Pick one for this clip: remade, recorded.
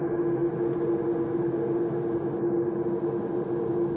recorded